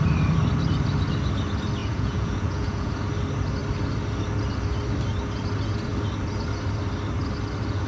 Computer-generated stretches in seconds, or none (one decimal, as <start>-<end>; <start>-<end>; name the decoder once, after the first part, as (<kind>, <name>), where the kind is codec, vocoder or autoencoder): 1.8-2.9 (vocoder, Vocos)